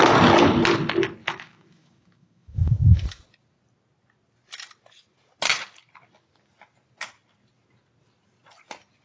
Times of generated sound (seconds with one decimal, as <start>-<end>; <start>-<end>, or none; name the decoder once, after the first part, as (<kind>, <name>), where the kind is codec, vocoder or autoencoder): 1.2-3.2 (autoencoder, DAC-VAE)